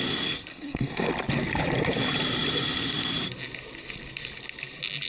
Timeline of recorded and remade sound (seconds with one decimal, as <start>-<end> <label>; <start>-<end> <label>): 0.0-0.5 recorded; 0.5-1.1 remade; 1.1-5.1 recorded